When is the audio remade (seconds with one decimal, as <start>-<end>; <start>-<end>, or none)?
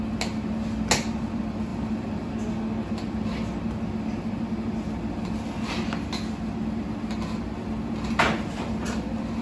1.7-2.3